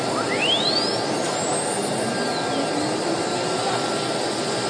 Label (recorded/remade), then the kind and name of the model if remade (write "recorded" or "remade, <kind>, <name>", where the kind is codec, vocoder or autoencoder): recorded